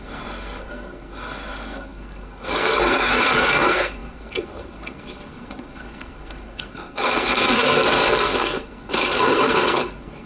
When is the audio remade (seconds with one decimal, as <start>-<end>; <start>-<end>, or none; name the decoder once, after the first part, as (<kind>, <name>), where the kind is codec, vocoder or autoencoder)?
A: 0.0-10.3 (codec, SNAC)